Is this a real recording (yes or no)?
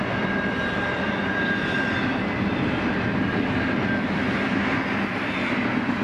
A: yes